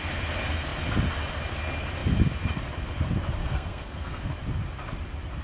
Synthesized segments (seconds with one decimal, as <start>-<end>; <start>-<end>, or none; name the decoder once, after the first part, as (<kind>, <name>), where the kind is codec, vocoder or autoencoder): 3.4-4.3 (codec, SNAC)